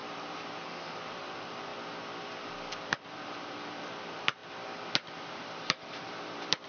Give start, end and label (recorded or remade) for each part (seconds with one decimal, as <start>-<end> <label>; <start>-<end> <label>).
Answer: 0.0-1.7 remade; 1.7-2.8 recorded; 2.8-4.4 remade; 4.4-5.3 recorded; 5.3-6.7 remade